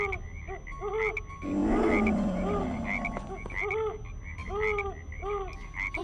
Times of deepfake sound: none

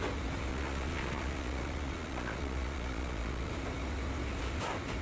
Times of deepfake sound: 0.5-3.5 (vocoder, Vocos)

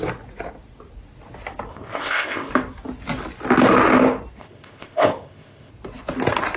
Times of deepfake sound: 1.7-2.5 (codec, ZipCodec); 4.4-5.7

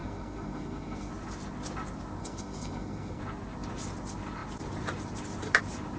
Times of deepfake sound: 0.0-1.1 (codec, SNAC); 2.2-3.2

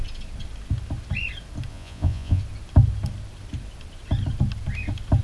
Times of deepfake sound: 1.7-2.4 (vocoder, Vocos)

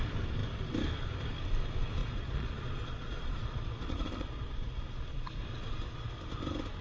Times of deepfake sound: 2.0-6.1 (vocoder, Vocos)

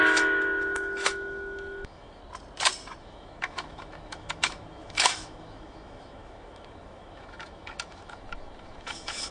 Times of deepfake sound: 0.0-2.2 (autoencoder, DAC-VAE); 3.0-9.3